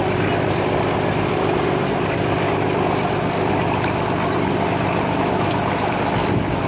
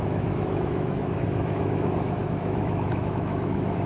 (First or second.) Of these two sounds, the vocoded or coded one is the second